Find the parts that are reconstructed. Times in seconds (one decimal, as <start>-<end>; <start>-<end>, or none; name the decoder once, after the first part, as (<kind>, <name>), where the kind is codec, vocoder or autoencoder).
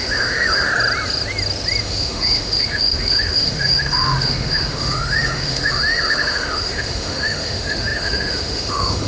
0.0-0.7 (autoencoder, DAC-VAE); 1.8-9.1